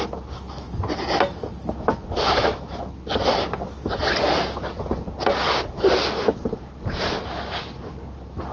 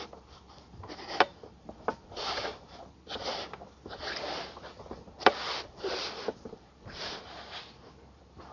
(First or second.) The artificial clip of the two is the second